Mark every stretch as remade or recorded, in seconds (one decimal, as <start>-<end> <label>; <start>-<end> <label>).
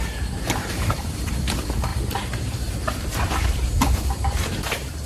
0.0-0.6 recorded; 0.6-1.1 remade; 1.1-1.9 recorded; 1.9-5.1 remade